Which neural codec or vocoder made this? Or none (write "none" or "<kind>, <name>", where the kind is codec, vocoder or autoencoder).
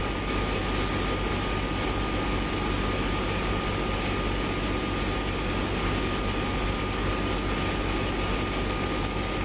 none